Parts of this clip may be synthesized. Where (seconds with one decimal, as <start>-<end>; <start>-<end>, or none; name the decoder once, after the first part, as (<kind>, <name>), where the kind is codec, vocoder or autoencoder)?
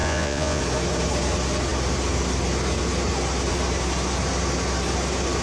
0.0-0.6 (vocoder, Vocos)